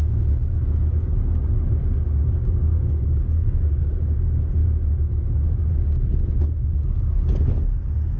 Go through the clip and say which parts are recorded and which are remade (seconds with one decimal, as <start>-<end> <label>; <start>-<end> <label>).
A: 0.0-1.8 recorded; 1.8-4.6 remade; 4.6-8.2 recorded